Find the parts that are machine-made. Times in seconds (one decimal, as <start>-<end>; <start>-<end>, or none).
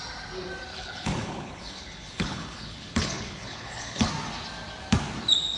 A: 0.7-4.1